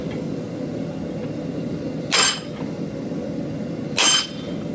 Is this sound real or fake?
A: real